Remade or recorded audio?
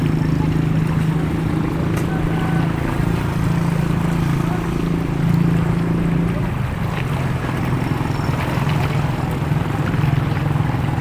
recorded